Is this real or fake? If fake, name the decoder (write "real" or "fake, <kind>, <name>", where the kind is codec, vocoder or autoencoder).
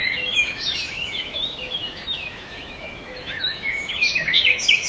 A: fake, autoencoder, DAC-VAE